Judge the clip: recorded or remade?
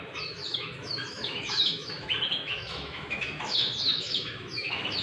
remade